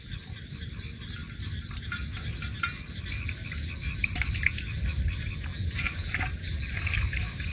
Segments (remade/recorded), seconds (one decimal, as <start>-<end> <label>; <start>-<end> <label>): 0.0-7.5 recorded